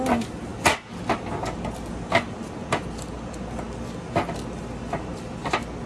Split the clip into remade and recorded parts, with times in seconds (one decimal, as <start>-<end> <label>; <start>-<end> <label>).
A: 0.0-5.9 recorded